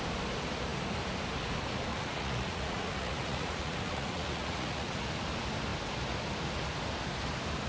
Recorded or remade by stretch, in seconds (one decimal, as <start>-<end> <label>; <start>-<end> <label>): 0.0-1.9 recorded; 1.9-5.1 remade; 5.1-7.7 recorded